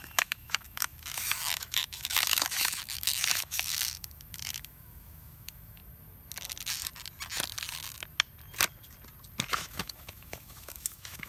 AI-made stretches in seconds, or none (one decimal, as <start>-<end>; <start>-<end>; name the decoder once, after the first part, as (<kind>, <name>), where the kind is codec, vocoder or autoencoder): 0.0-5.8 (autoencoder, DAC-VAE); 9.5-11.3